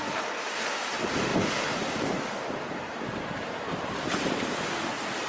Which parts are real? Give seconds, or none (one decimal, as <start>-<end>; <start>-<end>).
0.0-1.3; 4.5-5.3